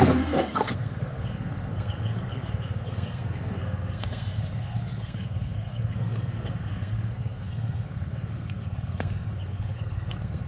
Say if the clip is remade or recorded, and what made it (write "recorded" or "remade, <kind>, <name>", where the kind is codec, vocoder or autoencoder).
remade, codec, SNAC